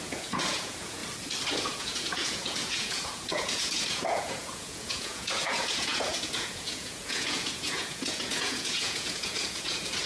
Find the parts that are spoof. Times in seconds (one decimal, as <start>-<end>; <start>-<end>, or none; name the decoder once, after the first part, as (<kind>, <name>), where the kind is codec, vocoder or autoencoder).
0.0-1.0 (vocoder, Vocos); 1.5-10.1